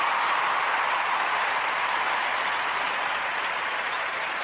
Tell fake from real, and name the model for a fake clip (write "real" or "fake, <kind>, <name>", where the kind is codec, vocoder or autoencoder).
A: fake, vocoder, BigVGAN v2